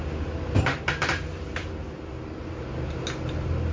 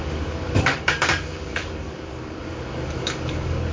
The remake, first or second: second